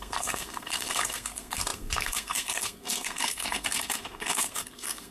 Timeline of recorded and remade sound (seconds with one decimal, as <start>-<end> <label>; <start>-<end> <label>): 0.0-5.1 remade